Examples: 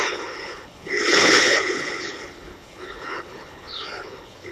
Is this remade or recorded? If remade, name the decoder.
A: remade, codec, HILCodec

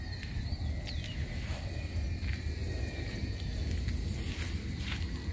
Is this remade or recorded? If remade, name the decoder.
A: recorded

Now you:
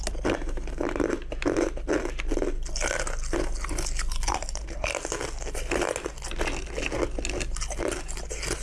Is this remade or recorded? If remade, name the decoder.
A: recorded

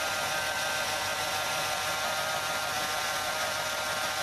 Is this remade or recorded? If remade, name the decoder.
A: recorded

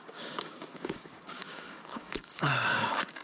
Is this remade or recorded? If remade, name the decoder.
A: remade, codec, DAC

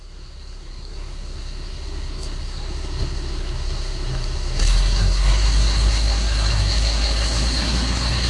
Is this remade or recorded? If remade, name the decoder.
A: remade, codec, SNAC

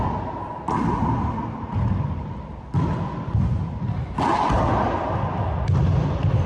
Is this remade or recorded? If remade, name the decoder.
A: recorded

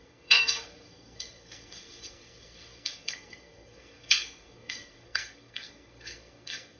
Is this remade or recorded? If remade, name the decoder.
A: remade, codec, SNAC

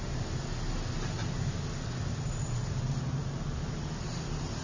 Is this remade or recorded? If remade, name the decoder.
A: recorded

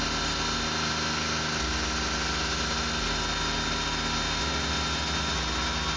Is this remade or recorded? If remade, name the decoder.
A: recorded